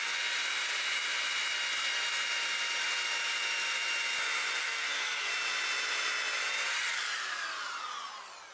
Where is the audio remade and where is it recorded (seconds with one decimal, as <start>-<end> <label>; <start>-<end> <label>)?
0.0-4.6 recorded; 4.6-5.3 remade; 5.3-8.5 recorded